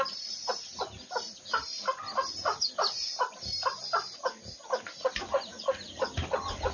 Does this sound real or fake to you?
real